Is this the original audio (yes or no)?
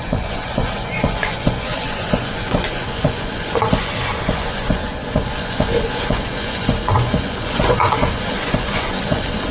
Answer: no